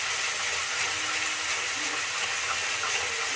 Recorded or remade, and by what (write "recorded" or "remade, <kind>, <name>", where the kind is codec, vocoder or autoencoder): recorded